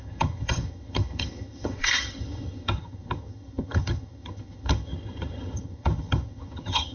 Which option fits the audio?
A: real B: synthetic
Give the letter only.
B